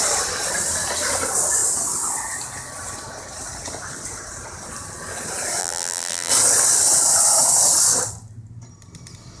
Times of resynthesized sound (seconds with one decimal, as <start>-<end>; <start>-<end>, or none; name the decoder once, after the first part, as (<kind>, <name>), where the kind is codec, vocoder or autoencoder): 5.6-6.3 (vocoder, BigVGAN v2)

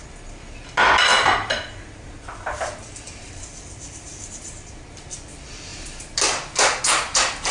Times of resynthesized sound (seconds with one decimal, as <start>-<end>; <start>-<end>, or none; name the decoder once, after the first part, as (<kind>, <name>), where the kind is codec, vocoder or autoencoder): 1.0-7.5 (vocoder, BigVGAN v2)

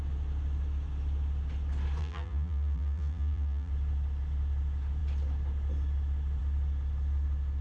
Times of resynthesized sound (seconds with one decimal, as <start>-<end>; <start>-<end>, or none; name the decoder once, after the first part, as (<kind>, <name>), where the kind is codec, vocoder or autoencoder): 2.0-3.7 (vocoder, BigVGAN v2)

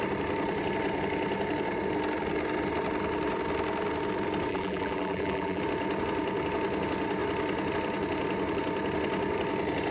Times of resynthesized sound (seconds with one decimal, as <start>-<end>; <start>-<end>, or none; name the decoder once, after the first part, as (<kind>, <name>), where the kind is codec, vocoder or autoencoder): 4.5-5.6 (vocoder, BigVGAN v2)

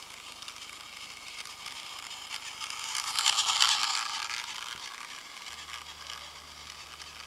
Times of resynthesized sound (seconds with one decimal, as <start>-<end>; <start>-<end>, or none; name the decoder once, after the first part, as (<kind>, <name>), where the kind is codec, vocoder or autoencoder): none

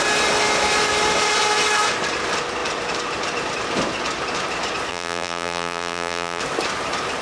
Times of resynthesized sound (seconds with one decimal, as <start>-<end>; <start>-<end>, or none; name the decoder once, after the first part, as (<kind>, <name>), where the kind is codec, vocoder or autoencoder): 4.9-6.4 (vocoder, BigVGAN v2)

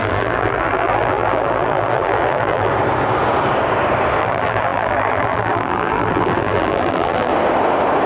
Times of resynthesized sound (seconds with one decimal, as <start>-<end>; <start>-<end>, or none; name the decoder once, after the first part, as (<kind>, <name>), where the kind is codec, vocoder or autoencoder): 0.0-2.7 (vocoder, BigVGAN v2); 4.2-7.3